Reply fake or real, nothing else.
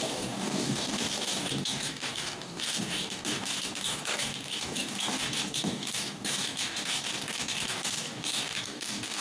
fake